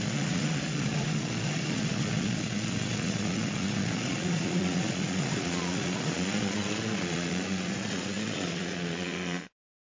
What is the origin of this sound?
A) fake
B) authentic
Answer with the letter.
A